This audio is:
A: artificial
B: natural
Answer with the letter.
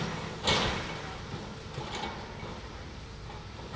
B